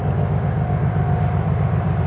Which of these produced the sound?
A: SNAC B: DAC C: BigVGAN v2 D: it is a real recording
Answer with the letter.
C